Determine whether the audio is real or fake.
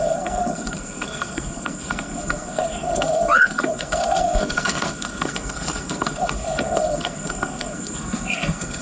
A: fake